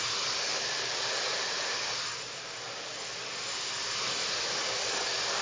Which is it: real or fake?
fake